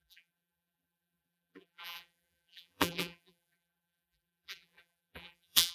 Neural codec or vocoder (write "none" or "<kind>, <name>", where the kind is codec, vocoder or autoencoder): vocoder, BigVGAN v2